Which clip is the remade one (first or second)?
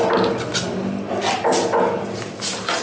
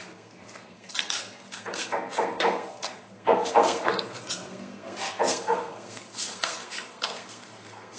second